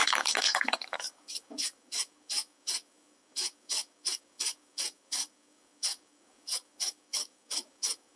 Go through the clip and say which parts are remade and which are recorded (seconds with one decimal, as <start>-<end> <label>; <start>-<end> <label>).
0.0-8.2 remade